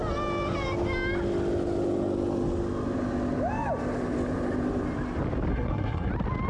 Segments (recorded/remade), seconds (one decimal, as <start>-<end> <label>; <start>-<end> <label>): 0.0-5.5 recorded; 5.5-6.1 remade; 6.1-6.5 recorded